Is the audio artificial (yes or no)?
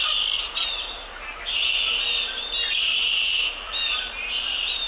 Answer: no